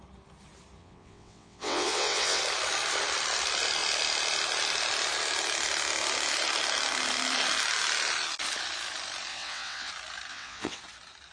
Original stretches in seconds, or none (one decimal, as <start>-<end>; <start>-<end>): 0.0-0.8; 2.4-9.3; 9.9-10.3; 10.8-11.3